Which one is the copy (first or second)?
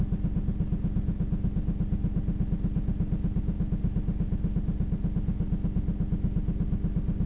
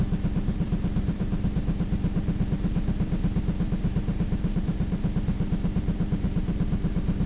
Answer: second